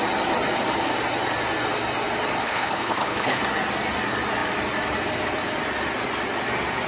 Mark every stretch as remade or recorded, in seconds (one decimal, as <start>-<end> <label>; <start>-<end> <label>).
0.0-2.4 recorded; 2.4-3.4 remade; 3.4-6.9 recorded